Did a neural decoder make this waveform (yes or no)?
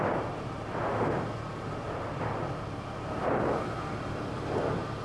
no